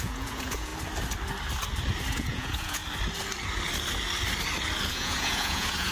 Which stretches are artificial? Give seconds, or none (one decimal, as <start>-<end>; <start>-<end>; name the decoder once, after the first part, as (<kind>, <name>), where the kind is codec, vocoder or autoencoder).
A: 0.0-0.7 (vocoder, Vocos); 2.1-2.8; 4.9-5.9